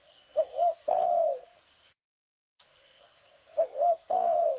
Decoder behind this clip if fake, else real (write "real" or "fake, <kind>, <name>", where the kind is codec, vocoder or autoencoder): fake, codec, SNAC